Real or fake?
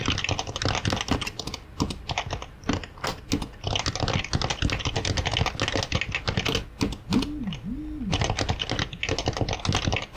real